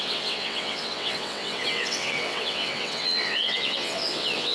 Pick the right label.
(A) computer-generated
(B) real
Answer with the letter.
A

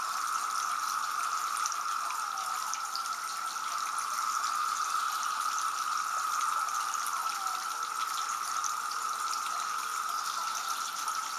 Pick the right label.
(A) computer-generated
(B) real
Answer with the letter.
B